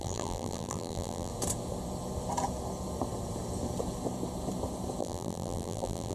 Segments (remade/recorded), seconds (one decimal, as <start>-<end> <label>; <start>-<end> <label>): 0.0-1.3 remade; 1.3-5.0 recorded; 5.0-6.1 remade